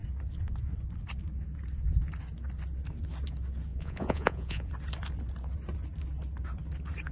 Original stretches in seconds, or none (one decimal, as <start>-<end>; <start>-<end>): 0.0-3.7; 4.7-7.1